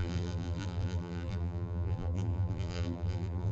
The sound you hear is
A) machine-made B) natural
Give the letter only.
A